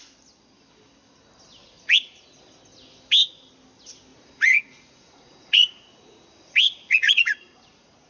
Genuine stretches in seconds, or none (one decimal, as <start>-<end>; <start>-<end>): 0.0-1.6; 2.4-4.1